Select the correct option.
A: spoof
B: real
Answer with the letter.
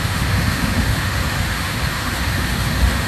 A